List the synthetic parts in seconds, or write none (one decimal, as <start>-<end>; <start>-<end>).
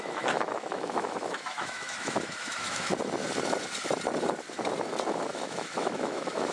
0.0-2.9; 5.3-6.5